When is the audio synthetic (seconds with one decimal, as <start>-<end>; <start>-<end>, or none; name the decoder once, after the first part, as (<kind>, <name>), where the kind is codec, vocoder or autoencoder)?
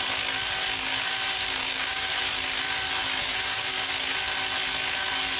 1.6-2.1 (codec, DAC); 3.2-3.9